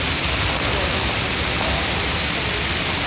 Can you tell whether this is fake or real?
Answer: real